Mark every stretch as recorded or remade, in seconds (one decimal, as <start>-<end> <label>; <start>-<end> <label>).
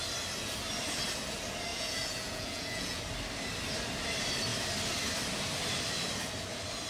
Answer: 0.0-1.7 recorded; 1.7-3.0 remade; 3.0-6.9 recorded